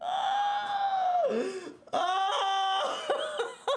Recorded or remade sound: recorded